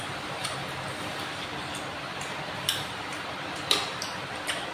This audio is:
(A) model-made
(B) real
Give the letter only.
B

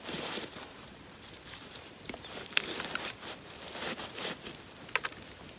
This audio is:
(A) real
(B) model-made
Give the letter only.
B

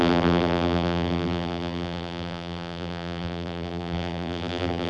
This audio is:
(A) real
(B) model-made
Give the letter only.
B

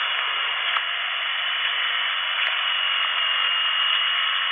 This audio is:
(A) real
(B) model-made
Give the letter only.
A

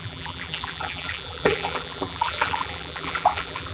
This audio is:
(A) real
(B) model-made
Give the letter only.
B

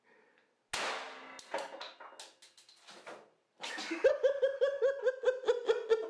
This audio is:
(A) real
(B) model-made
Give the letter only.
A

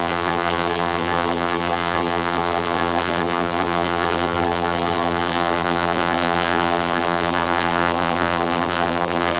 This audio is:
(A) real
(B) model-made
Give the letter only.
B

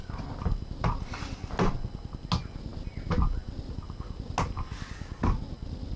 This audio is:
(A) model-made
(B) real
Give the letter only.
B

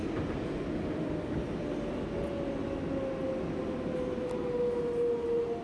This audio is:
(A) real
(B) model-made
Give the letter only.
A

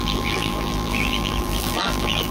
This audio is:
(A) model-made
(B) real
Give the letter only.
A